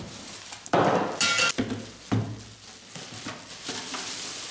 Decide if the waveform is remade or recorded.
recorded